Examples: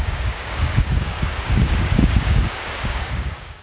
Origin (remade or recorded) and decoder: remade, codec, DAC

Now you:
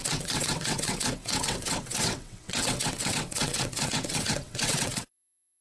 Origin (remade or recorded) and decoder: remade, vocoder, WaveNeXt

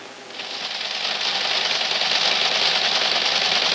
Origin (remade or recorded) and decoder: recorded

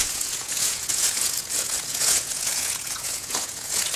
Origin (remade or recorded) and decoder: remade, vocoder, Vocos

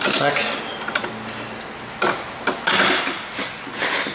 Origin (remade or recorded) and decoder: recorded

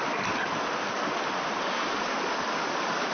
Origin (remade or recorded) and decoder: recorded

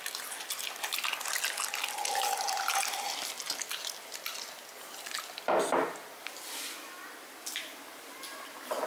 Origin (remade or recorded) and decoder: recorded